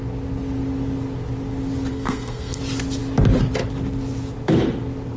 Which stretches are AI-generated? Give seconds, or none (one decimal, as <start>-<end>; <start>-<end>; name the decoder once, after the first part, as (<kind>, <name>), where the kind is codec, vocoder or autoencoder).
1.9-2.6 (codec, SNAC)